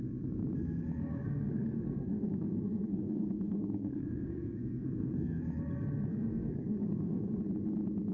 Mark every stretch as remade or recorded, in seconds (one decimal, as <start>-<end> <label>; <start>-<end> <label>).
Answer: 0.0-1.0 recorded; 1.0-5.4 remade; 5.4-6.1 recorded; 6.1-7.4 remade; 7.4-8.1 recorded